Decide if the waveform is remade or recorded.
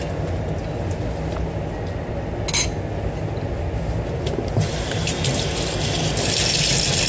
recorded